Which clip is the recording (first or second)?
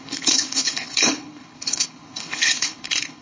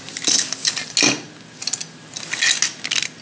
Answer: second